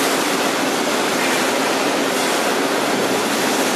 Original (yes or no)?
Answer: yes